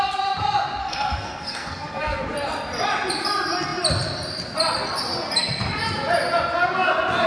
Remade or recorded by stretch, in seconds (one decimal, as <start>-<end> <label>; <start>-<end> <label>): 0.0-0.8 recorded; 0.8-2.2 remade; 2.2-7.3 recorded